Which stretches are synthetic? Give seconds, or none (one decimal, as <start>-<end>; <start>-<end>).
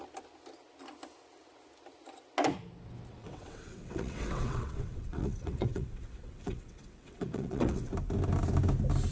3.1-7.9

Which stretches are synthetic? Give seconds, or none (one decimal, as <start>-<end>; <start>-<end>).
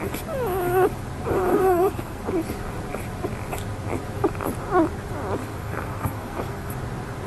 1.5-2.2; 5.4-6.7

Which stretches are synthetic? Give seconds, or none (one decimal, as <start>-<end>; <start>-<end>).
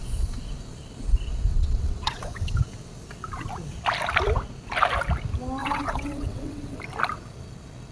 1.5-2.6; 5.6-6.8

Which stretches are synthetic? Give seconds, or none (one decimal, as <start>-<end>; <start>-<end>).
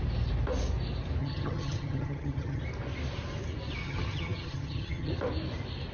1.2-2.6; 3.8-5.1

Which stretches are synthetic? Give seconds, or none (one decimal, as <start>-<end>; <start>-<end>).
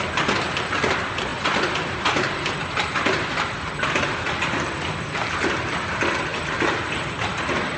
1.3-4.9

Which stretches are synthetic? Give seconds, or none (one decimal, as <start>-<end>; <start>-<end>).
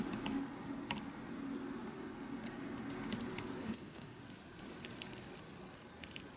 3.6-4.2